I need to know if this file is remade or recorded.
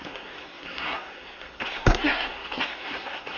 remade